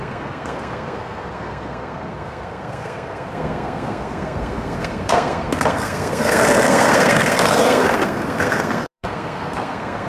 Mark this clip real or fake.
fake